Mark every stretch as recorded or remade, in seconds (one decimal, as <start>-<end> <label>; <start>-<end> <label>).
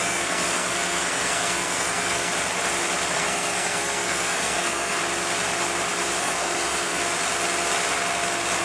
0.0-2.3 remade; 2.3-3.1 recorded; 3.1-5.0 remade; 5.0-6.2 recorded; 6.2-7.0 remade; 7.0-8.6 recorded